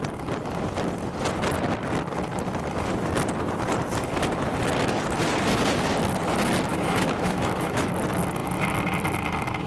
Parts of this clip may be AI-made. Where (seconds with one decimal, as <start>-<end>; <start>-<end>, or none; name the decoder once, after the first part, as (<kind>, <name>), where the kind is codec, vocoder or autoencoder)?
6.7-7.9 (autoencoder, DAC-VAE)